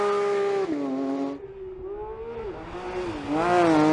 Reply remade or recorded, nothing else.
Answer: recorded